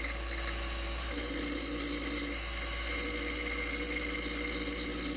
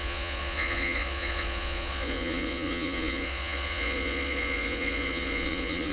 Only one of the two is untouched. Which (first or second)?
first